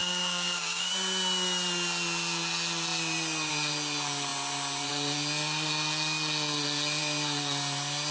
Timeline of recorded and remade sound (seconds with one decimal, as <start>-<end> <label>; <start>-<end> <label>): 0.0-0.9 remade; 0.9-8.1 recorded